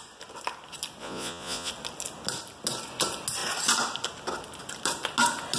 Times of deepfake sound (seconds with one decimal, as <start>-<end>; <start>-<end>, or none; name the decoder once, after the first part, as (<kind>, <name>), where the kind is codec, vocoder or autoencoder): 1.0-1.7 (vocoder, Vocos)